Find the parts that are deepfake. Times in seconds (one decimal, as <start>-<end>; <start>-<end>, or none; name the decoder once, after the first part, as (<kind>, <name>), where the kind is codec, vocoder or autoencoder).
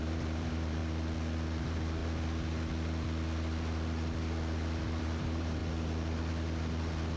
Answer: 0.0-0.8 (vocoder, BigVGAN v2); 1.6-2.0; 5.0-5.6